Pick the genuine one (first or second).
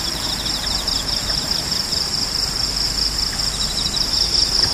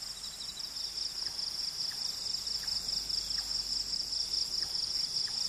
second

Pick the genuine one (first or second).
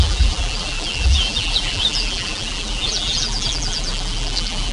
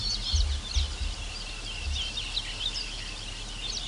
second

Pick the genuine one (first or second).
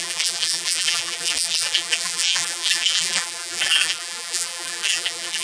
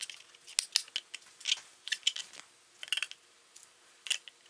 second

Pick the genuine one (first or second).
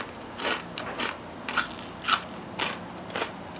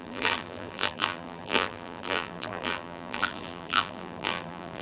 first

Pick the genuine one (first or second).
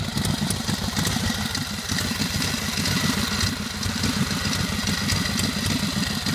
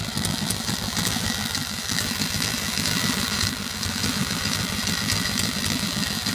first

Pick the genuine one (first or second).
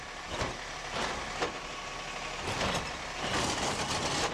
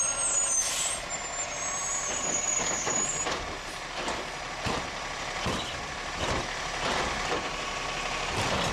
first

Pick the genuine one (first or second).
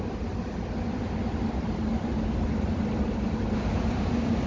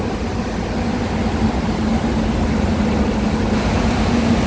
second